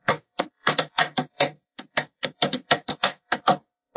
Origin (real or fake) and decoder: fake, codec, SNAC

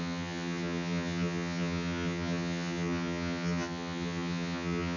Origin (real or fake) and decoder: fake, vocoder, HiFi-GAN